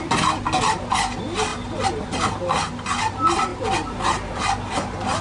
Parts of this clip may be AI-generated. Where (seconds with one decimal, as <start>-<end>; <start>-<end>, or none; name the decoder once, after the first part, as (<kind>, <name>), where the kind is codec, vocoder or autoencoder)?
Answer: none